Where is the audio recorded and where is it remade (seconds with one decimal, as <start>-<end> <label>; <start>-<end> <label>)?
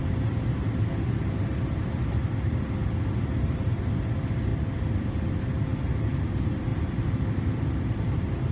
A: 0.0-4.5 recorded; 4.5-5.1 remade; 5.1-5.7 recorded; 5.7-6.3 remade; 6.3-8.5 recorded